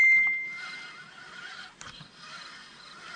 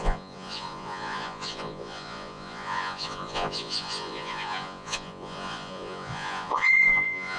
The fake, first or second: second